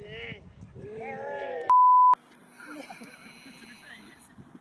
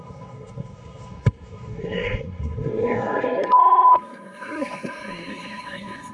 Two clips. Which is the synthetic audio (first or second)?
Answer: second